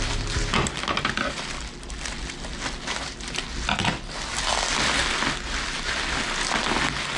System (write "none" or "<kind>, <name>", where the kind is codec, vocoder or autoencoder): none